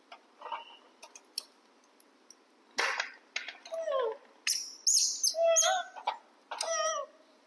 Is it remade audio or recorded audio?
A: recorded